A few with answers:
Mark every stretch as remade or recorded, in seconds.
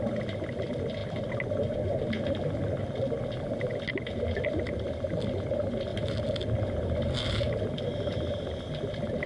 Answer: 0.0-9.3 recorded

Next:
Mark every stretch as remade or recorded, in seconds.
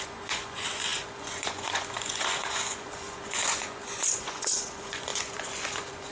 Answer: 0.0-6.1 remade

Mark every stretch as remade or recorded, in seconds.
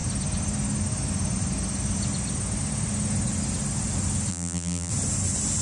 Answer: 0.0-4.3 recorded; 4.3-4.9 remade; 4.9-5.6 recorded